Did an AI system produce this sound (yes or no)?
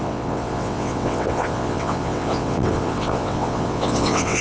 yes